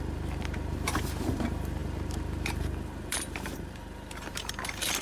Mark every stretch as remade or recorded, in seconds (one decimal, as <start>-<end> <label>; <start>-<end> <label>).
0.0-5.0 remade